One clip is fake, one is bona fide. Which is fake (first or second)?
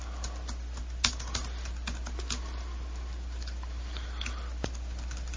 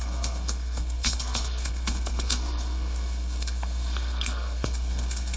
second